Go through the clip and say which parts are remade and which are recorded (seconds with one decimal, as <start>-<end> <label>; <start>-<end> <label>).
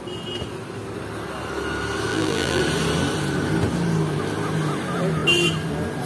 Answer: 0.0-2.1 recorded; 2.1-2.6 remade; 2.6-6.1 recorded